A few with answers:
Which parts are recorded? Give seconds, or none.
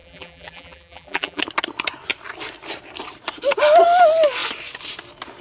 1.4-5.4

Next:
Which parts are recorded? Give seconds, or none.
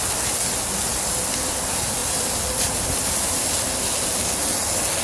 0.0-0.9; 1.5-2.0; 3.6-5.0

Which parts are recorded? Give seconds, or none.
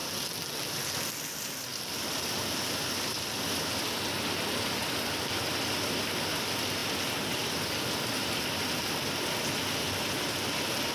0.0-10.9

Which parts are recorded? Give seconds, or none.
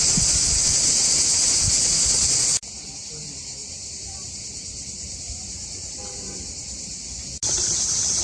0.0-3.6; 7.1-8.2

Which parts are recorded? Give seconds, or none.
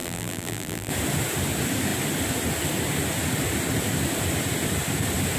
0.9-5.4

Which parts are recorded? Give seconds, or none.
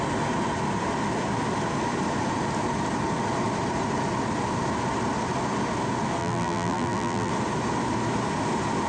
0.0-6.2; 7.3-8.9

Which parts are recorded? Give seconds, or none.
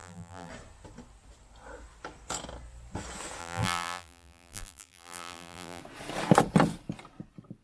0.5-3.4; 5.8-7.6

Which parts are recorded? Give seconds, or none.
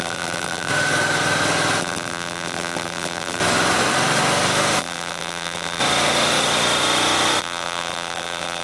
0.7-1.8; 3.4-4.8; 5.8-7.4